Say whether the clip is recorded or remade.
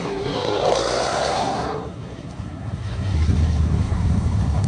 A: remade